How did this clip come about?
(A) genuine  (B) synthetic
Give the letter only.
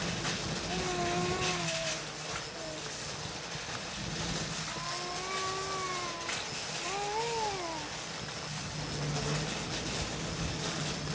A